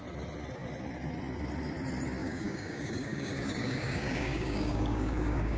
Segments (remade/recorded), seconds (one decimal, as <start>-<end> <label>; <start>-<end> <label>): 0.0-2.2 recorded; 2.2-5.6 remade